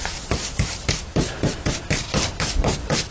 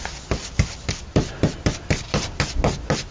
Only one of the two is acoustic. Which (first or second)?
second